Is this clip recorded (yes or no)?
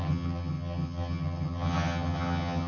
no